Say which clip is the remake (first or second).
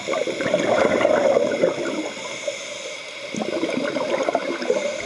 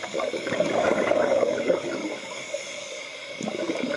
second